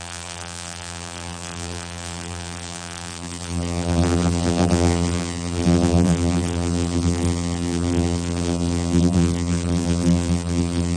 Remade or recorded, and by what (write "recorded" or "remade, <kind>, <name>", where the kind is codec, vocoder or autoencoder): remade, vocoder, BigVGAN v2